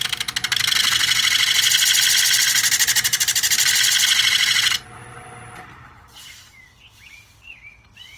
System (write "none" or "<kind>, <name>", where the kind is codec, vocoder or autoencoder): none